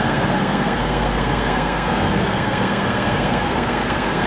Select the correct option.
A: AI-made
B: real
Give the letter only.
A